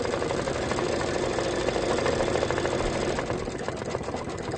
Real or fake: real